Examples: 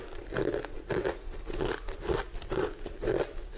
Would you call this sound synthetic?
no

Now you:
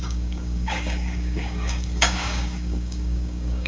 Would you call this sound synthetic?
yes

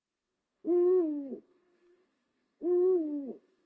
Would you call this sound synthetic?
yes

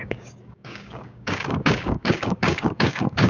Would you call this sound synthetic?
yes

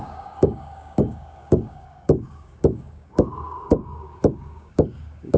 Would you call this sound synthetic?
yes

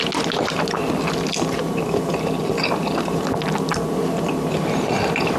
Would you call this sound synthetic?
no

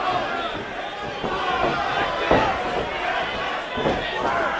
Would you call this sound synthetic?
no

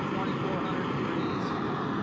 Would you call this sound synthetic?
no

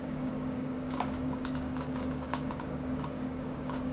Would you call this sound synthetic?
yes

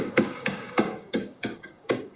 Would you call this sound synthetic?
yes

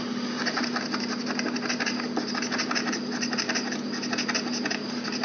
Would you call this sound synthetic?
no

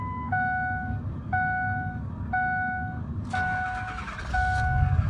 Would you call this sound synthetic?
yes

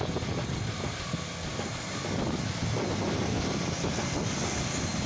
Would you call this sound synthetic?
no